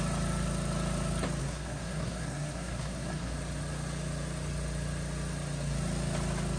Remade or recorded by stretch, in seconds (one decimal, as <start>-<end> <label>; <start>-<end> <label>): 0.0-1.4 recorded; 1.4-3.3 remade; 3.3-6.6 recorded